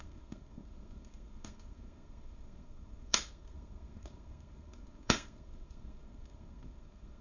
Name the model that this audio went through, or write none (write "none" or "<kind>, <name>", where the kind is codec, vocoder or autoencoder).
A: codec, SNAC